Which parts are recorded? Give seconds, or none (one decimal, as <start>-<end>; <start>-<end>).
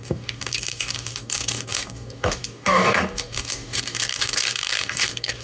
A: none